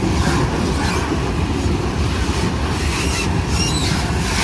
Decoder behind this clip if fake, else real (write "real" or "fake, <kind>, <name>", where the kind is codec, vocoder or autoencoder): real